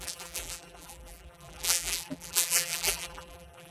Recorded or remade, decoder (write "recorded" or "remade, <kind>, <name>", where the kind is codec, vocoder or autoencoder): remade, vocoder, BigVGAN v2